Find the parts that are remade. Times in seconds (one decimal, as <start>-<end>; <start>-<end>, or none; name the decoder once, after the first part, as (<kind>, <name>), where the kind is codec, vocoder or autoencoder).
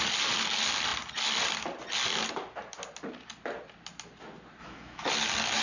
4.6-5.1 (autoencoder, DAC-VAE)